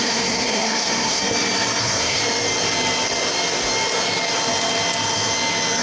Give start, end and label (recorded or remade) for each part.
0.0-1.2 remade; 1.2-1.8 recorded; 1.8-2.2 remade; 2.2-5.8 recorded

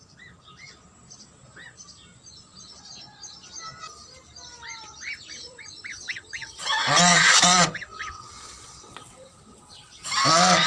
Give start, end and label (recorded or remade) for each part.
0.0-5.9 recorded; 5.9-10.1 remade; 10.1-10.7 recorded